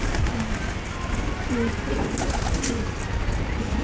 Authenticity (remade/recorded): recorded